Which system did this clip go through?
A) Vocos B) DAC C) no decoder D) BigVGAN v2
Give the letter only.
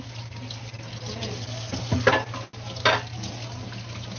C